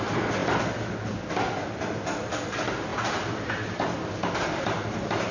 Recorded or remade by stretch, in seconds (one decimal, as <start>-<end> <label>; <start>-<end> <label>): 0.0-2.9 recorded; 2.9-3.5 remade; 3.5-5.3 recorded